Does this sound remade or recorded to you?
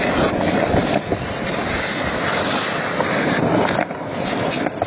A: recorded